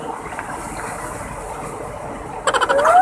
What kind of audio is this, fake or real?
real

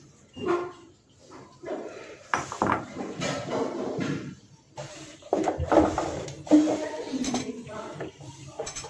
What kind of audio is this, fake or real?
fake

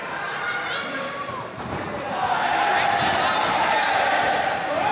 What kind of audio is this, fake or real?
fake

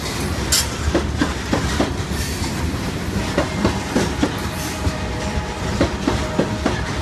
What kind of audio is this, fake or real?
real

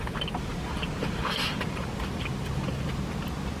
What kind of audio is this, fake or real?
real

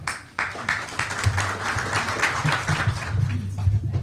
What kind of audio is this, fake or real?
real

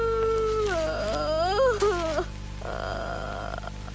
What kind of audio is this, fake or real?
real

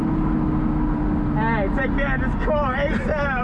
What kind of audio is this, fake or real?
real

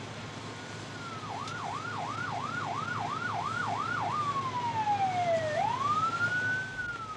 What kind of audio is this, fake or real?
real